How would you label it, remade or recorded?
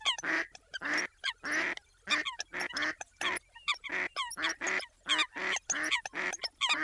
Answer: recorded